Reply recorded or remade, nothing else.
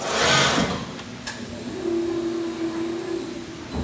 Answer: recorded